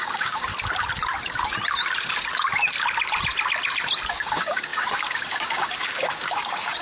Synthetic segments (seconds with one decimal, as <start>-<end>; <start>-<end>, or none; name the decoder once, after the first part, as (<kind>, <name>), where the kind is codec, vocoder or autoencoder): 0.0-0.5 (codec, DAC); 4.1-6.8